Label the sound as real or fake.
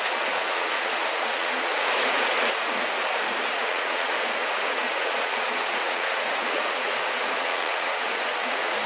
fake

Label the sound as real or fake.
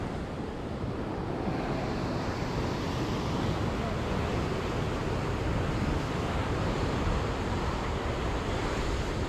real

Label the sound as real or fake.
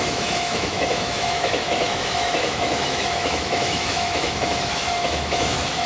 fake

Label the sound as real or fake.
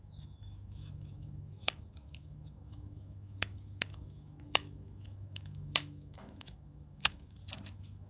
fake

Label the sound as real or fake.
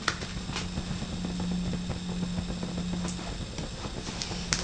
real